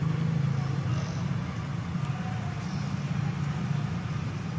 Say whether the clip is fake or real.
real